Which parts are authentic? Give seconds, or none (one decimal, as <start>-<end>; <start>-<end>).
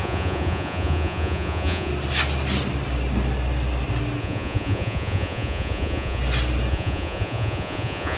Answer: 1.9-4.2; 6.2-6.7